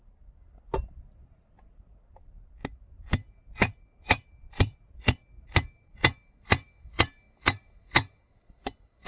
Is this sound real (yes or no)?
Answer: yes